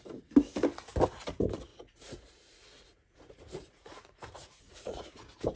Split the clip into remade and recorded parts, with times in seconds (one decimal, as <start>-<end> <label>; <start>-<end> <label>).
0.0-1.7 recorded; 1.7-5.1 remade; 5.1-5.6 recorded